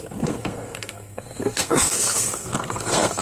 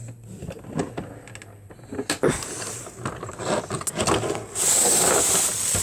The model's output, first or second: first